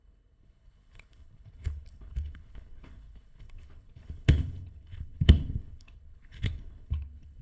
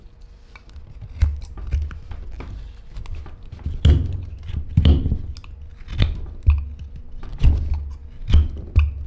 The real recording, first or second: second